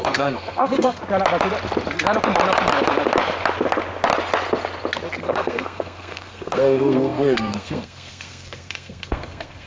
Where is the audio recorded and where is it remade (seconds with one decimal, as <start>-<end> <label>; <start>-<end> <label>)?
0.0-1.0 remade; 1.0-5.2 recorded; 5.2-9.7 remade